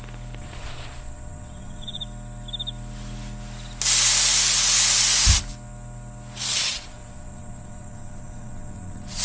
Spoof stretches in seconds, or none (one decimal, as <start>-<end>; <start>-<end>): 0.4-2.0; 6.5-9.2